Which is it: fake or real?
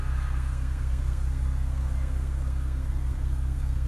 fake